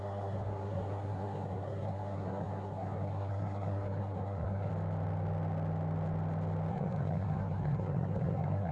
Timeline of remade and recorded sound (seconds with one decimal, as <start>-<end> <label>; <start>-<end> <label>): 0.0-4.7 remade; 4.7-6.7 recorded; 6.7-8.7 remade